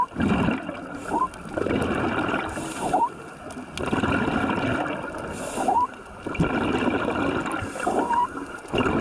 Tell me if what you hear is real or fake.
real